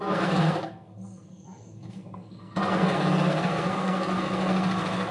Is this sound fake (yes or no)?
yes